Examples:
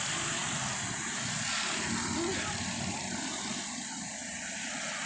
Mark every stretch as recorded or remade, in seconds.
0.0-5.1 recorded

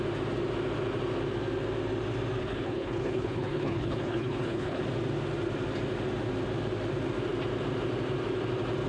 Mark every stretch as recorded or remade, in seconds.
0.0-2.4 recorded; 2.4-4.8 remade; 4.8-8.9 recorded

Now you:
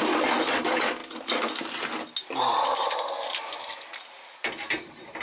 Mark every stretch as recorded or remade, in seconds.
0.0-5.2 recorded

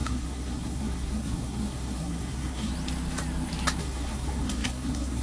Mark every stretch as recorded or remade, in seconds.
0.0-2.7 remade; 2.7-3.8 recorded; 3.8-5.2 remade

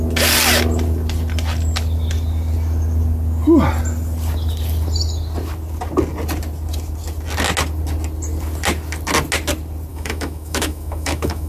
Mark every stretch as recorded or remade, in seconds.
0.0-9.9 recorded; 9.9-11.5 remade

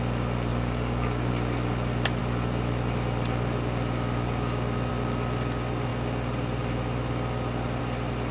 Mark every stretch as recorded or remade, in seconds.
0.0-0.5 recorded; 0.5-1.3 remade; 1.3-8.3 recorded

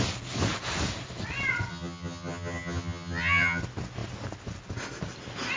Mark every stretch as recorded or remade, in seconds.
0.0-1.7 recorded; 1.7-3.6 remade; 3.6-5.6 recorded